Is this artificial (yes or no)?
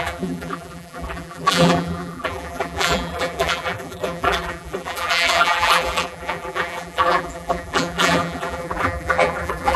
yes